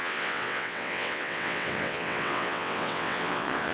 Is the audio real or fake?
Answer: fake